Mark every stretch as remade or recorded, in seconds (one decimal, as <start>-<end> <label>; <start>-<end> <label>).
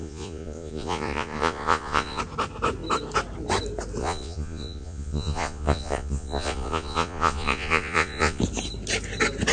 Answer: 0.0-2.2 remade; 2.2-4.0 recorded; 4.0-8.4 remade; 8.4-9.5 recorded